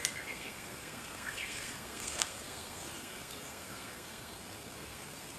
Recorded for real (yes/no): no